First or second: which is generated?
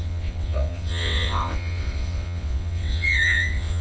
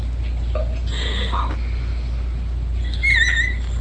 first